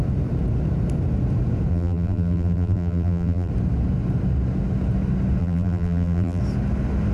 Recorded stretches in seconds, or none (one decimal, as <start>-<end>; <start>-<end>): 0.0-1.7; 3.5-5.4; 6.4-7.1